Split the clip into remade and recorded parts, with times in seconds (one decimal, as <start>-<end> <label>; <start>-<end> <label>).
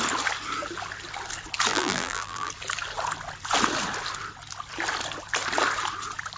0.0-1.7 recorded; 1.7-2.5 remade; 2.5-6.4 recorded